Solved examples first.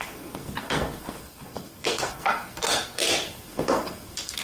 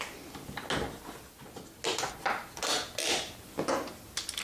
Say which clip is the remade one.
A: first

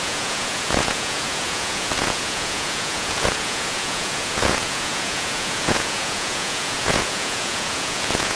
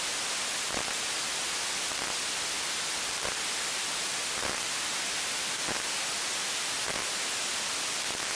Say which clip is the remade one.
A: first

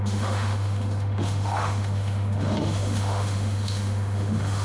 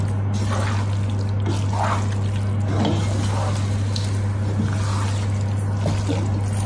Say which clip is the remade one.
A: first